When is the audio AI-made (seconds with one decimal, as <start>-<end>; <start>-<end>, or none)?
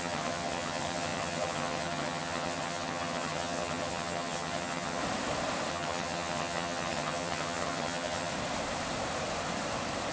0.0-5.0; 5.7-8.3